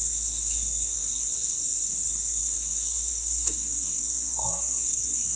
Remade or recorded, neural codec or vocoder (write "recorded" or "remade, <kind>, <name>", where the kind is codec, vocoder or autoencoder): remade, codec, SNAC